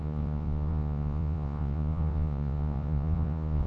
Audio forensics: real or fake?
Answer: fake